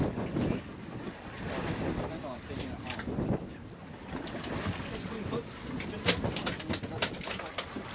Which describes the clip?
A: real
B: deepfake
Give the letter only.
A